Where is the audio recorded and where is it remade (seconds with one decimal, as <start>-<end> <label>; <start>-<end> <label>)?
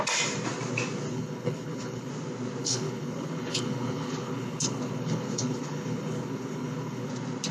0.0-1.1 recorded; 1.1-2.1 remade; 2.1-2.6 recorded; 2.6-7.1 remade; 7.1-7.5 recorded